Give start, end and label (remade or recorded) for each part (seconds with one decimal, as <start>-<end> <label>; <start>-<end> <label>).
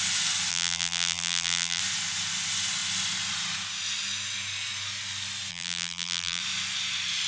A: 0.0-0.5 recorded; 0.5-1.8 remade; 1.8-5.5 recorded; 5.5-6.4 remade; 6.4-7.3 recorded